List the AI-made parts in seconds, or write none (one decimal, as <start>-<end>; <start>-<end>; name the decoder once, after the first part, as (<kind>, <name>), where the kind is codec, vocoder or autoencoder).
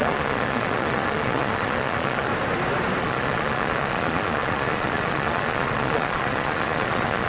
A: 0.0-2.3 (vocoder, Vocos); 3.0-7.3